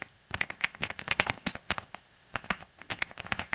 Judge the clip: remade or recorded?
remade